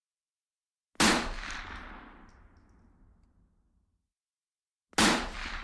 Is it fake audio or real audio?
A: real